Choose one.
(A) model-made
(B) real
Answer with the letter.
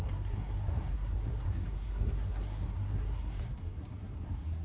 A